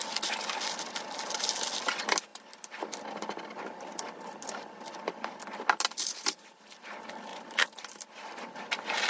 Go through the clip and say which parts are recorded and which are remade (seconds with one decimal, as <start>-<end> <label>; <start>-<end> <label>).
0.0-9.1 recorded